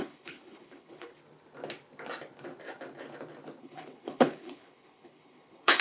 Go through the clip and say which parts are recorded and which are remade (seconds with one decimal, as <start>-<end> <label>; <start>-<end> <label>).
0.0-1.2 remade; 1.2-3.6 recorded; 3.6-5.8 remade